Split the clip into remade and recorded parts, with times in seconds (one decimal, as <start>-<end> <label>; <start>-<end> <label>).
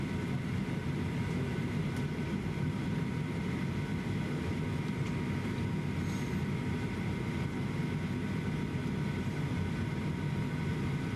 0.0-0.8 recorded; 0.8-3.4 remade; 3.4-11.2 recorded